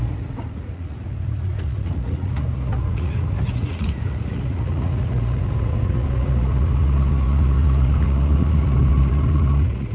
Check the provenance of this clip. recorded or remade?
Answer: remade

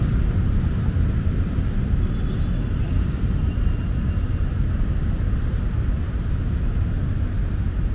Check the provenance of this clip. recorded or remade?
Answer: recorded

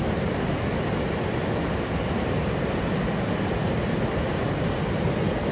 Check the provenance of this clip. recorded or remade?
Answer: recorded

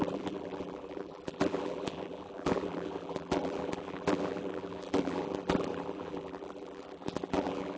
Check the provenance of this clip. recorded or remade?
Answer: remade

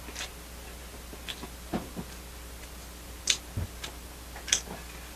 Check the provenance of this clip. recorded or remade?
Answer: recorded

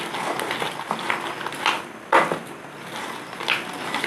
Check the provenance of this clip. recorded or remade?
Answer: recorded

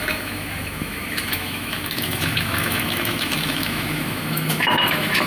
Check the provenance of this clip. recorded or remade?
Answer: remade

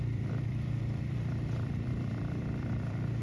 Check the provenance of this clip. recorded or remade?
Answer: remade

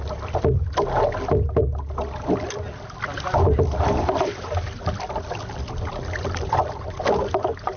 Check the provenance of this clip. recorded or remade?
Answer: recorded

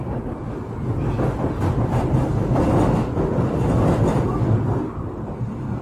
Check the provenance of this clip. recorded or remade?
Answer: recorded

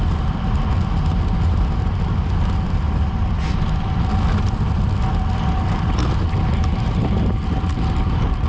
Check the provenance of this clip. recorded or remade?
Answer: recorded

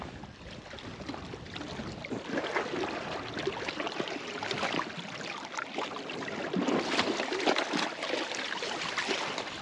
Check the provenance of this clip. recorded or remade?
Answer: recorded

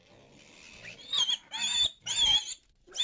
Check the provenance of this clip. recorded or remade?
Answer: recorded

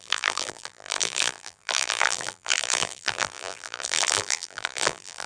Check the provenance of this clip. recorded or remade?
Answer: remade